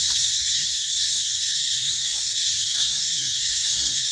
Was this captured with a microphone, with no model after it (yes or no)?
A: no